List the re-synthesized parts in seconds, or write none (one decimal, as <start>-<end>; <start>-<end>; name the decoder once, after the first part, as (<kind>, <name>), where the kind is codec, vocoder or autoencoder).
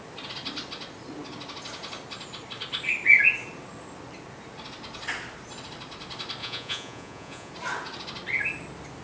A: 6.4-7.5 (vocoder, Vocos)